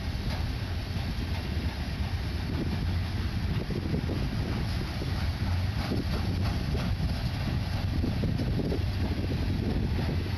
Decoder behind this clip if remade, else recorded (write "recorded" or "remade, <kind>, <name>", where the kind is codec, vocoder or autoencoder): recorded